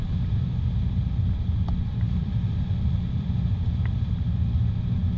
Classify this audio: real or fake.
real